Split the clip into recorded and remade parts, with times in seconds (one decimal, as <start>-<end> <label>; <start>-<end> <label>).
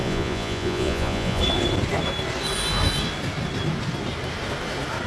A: 0.0-1.4 remade; 1.4-5.1 recorded